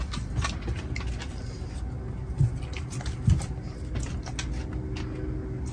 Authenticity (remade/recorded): recorded